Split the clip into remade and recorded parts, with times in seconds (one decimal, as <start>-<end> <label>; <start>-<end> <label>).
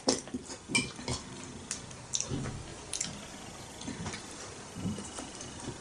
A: 0.0-5.8 recorded